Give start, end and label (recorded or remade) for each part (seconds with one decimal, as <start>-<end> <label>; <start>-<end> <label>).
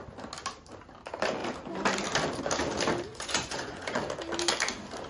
0.0-3.1 recorded; 3.1-4.0 remade; 4.0-5.1 recorded